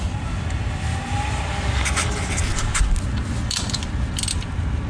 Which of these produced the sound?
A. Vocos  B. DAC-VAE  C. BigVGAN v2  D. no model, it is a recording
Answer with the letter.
D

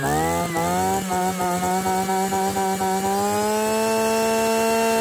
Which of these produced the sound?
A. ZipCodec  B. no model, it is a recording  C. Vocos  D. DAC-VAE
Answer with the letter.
B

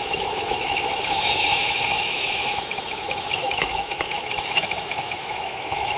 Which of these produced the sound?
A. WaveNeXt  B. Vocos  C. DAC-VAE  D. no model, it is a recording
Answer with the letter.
C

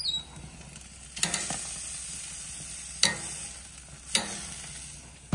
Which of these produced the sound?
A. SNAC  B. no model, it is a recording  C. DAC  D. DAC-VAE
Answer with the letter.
B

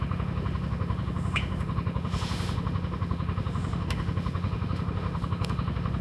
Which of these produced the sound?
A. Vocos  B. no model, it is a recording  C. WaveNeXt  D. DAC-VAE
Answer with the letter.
D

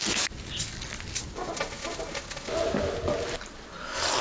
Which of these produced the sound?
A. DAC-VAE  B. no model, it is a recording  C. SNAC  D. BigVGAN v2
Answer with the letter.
B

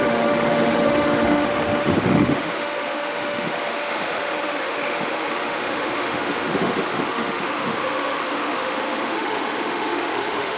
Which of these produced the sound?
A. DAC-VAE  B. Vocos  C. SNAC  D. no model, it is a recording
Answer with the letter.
A